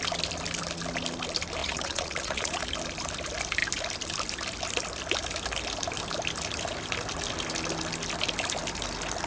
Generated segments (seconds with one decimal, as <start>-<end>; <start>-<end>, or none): 1.6-2.6